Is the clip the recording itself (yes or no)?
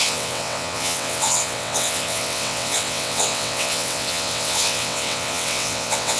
no